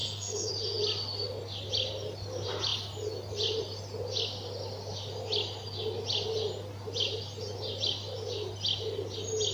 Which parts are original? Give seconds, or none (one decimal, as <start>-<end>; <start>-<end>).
0.5-9.5